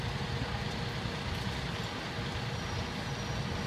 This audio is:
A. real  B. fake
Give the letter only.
A